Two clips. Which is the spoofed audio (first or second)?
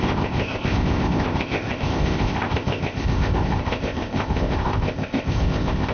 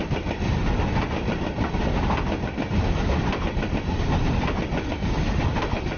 first